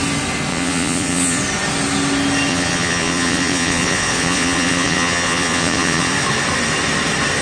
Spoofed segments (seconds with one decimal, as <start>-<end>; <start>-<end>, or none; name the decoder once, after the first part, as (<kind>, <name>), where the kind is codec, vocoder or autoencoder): 0.5-1.4 (vocoder, Vocos); 2.5-6.1